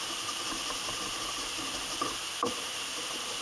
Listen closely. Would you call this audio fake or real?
fake